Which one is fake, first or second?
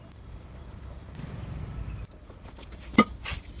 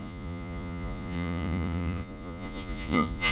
second